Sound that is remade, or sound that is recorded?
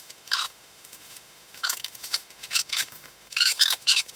remade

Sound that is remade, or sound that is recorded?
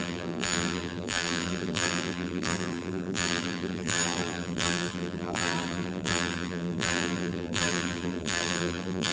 remade